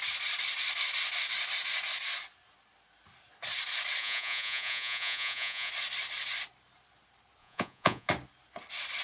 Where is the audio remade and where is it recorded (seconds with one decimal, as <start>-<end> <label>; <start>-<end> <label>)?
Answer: 0.0-4.0 recorded; 4.0-5.7 remade; 5.7-7.4 recorded; 7.4-8.1 remade; 8.1-9.0 recorded